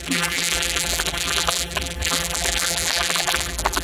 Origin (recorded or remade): remade